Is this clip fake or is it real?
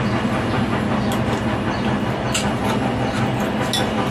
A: real